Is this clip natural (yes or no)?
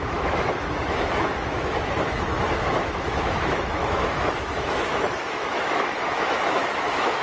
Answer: no